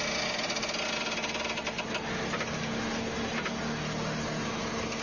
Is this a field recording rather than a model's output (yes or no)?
yes